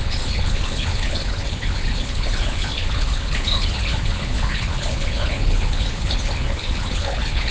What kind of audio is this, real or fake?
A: fake